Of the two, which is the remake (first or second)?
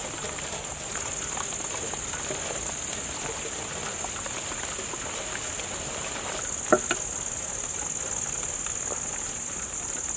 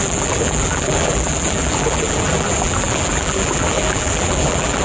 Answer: second